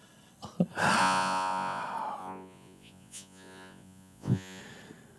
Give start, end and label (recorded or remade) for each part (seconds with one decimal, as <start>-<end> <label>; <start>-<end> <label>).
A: 0.0-1.0 recorded; 1.0-1.8 remade; 1.8-2.2 recorded; 2.2-4.6 remade; 4.6-5.2 recorded